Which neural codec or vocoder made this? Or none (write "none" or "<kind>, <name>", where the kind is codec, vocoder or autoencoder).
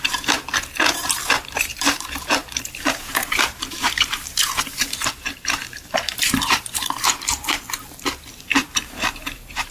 vocoder, BigVGAN v2